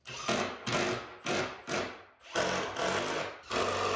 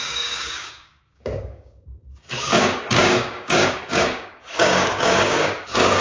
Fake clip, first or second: second